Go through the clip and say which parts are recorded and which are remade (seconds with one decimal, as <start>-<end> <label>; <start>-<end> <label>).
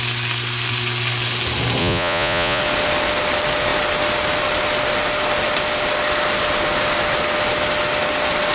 0.0-1.8 recorded; 1.8-2.6 remade; 2.6-8.5 recorded